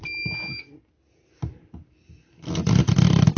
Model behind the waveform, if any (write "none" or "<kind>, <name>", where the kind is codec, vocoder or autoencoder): none